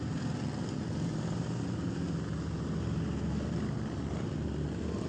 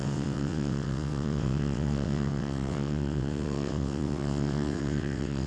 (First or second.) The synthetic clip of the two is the second